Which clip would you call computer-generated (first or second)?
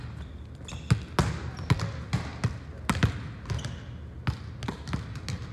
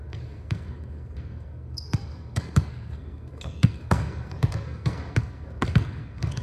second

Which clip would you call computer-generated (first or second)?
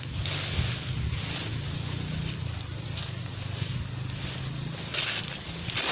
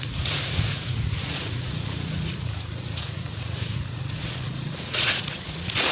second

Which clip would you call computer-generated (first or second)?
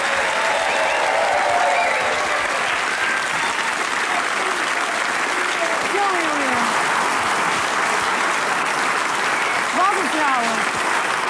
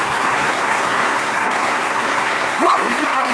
second